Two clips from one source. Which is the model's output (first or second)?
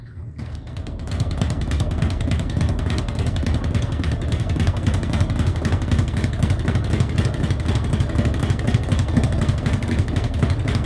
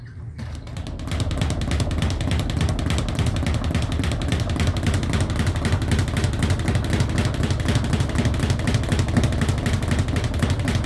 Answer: first